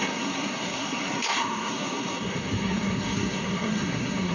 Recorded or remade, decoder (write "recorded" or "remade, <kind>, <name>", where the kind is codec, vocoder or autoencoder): remade, codec, SNAC